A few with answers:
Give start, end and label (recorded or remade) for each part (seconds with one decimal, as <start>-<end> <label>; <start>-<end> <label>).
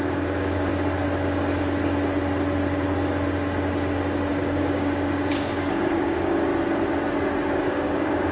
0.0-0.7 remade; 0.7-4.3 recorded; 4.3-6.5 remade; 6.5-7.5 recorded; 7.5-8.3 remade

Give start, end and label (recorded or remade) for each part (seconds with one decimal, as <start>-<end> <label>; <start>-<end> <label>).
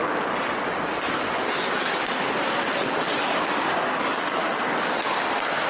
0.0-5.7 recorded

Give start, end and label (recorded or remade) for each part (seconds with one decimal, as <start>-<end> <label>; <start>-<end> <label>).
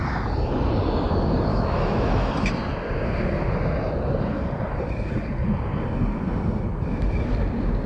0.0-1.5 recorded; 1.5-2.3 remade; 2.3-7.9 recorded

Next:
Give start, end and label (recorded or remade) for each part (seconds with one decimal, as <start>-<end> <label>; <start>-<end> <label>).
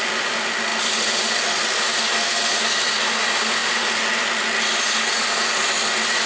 0.0-6.3 recorded